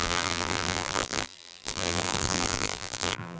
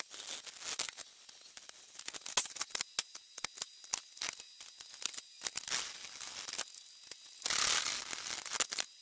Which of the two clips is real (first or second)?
second